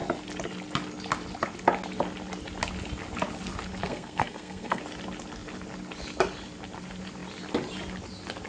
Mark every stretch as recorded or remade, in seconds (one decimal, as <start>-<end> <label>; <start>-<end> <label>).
0.0-3.8 recorded; 3.8-4.8 remade; 4.8-8.5 recorded